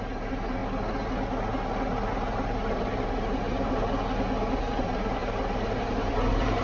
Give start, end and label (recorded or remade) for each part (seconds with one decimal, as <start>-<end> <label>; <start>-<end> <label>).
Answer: 0.0-0.6 remade; 0.6-2.1 recorded; 2.1-3.8 remade; 3.8-4.6 recorded; 4.6-6.6 remade

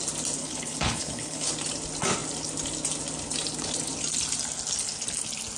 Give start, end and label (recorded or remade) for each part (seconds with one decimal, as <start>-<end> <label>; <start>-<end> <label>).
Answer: 0.0-0.4 recorded; 0.4-1.5 remade; 1.5-5.6 recorded

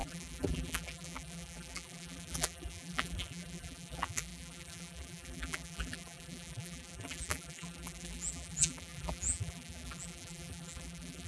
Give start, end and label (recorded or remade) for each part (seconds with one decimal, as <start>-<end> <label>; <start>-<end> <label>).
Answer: 0.0-11.3 remade

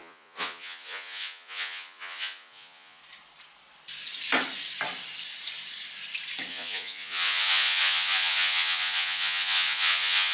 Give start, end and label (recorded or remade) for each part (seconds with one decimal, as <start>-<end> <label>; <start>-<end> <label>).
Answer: 0.0-3.0 remade; 3.0-6.5 recorded; 6.5-10.3 remade

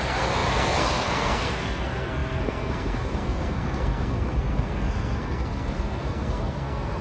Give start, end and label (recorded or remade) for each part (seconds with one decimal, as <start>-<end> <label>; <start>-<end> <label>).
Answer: 0.0-7.0 remade

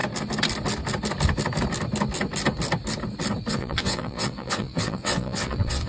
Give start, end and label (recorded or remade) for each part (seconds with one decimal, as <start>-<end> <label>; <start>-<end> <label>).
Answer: 0.0-3.5 recorded; 3.5-5.9 remade

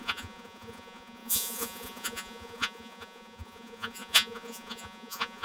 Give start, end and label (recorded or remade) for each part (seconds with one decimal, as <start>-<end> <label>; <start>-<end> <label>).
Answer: 0.0-5.4 remade

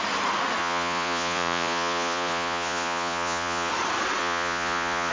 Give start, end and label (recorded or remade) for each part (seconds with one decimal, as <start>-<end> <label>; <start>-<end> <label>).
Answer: 0.0-0.6 recorded; 0.6-3.7 remade; 3.7-4.2 recorded; 4.2-5.1 remade